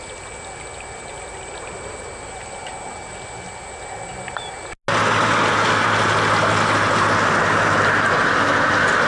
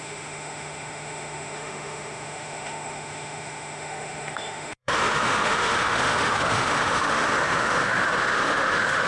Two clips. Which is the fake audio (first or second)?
second